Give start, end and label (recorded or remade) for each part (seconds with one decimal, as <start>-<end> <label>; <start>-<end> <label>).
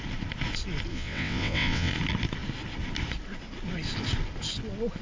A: 0.0-0.9 recorded; 0.9-1.9 remade; 1.9-5.0 recorded